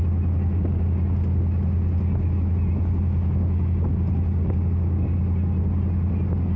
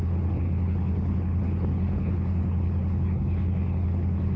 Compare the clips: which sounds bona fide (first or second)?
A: first